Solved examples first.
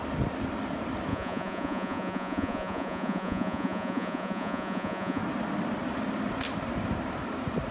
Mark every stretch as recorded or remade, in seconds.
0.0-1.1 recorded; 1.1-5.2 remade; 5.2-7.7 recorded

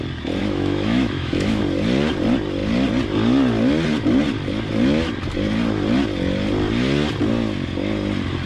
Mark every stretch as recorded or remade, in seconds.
0.0-0.4 recorded; 0.4-1.6 remade; 1.6-8.5 recorded

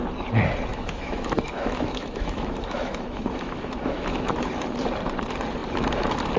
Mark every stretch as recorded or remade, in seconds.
0.0-0.7 recorded; 0.7-4.5 remade; 4.5-6.4 recorded